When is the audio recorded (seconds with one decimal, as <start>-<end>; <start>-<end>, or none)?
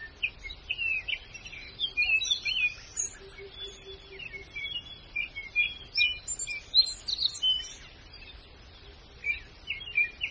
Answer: 0.0-3.3; 5.4-9.5